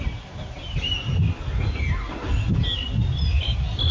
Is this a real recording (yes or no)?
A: yes